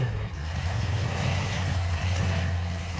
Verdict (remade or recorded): remade